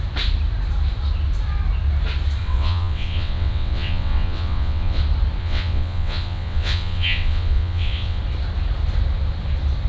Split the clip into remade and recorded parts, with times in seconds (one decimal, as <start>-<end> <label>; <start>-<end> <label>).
0.0-2.4 recorded; 2.4-5.0 remade; 5.0-5.4 recorded; 5.4-8.2 remade; 8.2-9.9 recorded